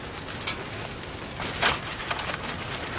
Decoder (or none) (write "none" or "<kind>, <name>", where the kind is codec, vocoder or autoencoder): none